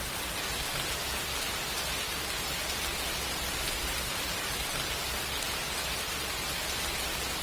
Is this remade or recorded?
recorded